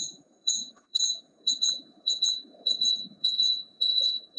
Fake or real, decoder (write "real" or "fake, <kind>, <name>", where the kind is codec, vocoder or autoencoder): fake, vocoder, Vocos